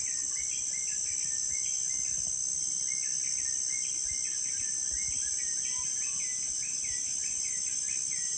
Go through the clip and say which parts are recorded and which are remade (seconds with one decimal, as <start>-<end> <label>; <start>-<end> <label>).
0.0-8.4 recorded